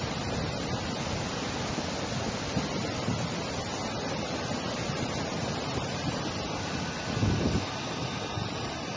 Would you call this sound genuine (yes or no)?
yes